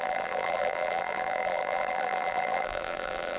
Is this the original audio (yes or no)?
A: no